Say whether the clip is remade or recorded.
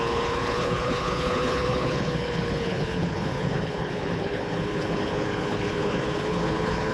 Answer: remade